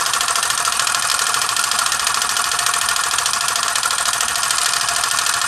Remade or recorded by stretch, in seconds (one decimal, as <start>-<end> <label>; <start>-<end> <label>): 0.0-1.1 recorded; 1.1-1.9 remade; 1.9-5.5 recorded